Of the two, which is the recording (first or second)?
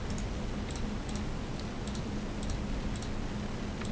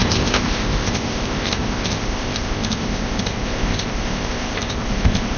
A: first